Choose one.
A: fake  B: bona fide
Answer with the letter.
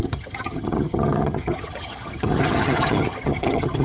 A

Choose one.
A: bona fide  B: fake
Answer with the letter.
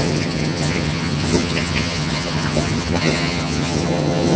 B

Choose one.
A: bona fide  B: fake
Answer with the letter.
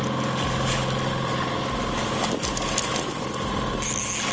A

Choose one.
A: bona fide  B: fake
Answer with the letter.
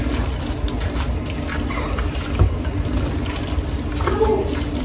A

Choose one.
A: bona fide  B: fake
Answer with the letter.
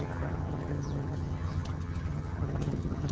B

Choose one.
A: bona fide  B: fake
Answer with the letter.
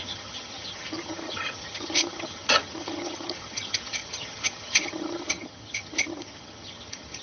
B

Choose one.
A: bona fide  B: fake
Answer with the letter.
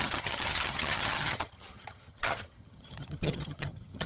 B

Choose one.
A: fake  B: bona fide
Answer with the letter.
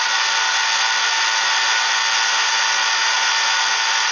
B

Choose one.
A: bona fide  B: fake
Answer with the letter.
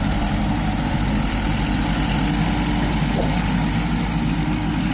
A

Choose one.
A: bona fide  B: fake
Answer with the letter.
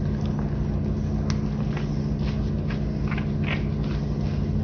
A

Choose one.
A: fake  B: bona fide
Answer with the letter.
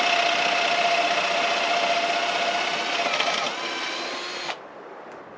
B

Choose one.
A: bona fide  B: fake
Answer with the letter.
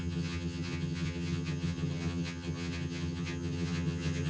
B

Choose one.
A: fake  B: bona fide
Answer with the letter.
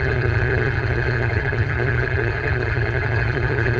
A